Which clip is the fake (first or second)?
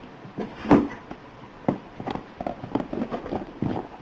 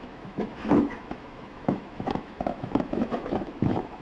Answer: second